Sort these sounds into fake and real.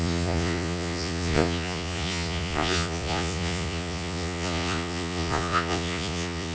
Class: fake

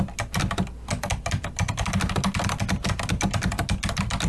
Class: real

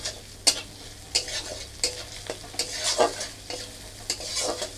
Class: real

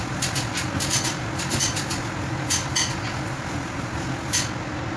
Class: real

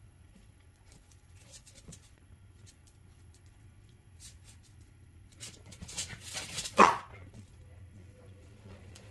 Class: fake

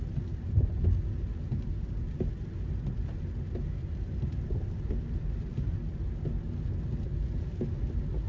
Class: real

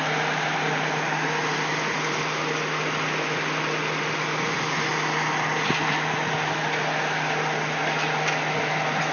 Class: real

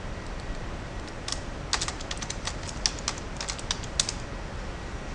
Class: real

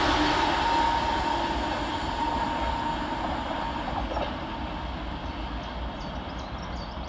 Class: real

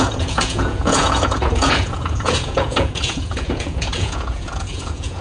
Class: fake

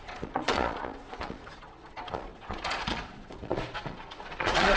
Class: fake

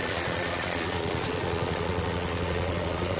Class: fake